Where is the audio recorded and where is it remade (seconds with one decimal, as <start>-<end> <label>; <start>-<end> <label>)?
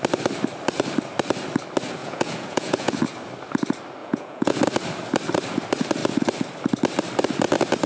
0.0-2.0 recorded; 2.0-3.0 remade; 3.0-4.0 recorded; 4.0-4.6 remade; 4.6-7.9 recorded